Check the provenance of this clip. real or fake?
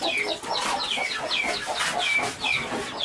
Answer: real